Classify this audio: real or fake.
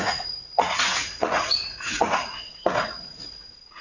fake